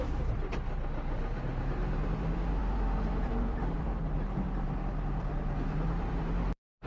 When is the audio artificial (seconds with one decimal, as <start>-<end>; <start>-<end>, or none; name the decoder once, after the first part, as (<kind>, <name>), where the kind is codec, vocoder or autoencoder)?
0.0-6.9 (vocoder, BigVGAN v2)